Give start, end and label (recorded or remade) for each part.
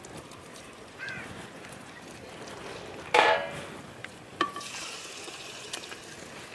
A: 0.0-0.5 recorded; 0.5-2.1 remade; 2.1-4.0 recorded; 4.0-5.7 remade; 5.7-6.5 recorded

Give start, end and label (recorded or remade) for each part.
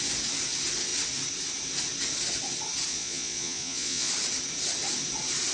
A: 0.0-2.9 recorded; 2.9-4.1 remade; 4.1-5.5 recorded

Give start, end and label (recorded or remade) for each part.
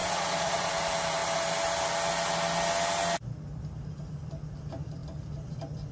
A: 0.0-0.7 remade; 0.7-5.9 recorded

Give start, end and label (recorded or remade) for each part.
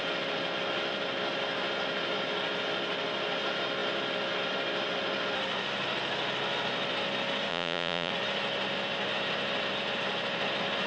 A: 0.0-7.5 recorded; 7.5-8.1 remade; 8.1-10.9 recorded